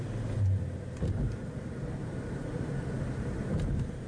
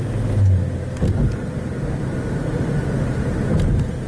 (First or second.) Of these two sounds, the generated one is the first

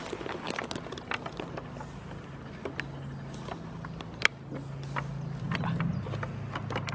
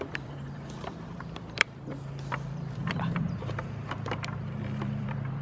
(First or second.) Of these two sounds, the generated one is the second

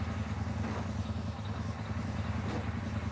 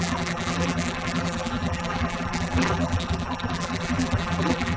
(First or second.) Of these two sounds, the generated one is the second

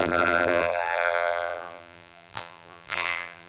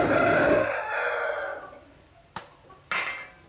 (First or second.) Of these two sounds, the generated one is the first